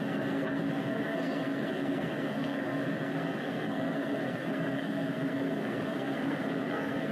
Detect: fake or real fake